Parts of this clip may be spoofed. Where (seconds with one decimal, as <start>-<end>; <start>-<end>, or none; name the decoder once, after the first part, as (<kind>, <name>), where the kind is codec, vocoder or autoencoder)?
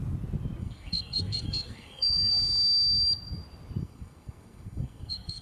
0.6-2.3 (codec, SNAC); 3.8-5.4